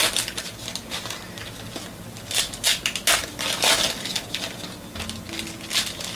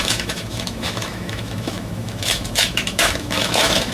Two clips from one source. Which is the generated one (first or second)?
second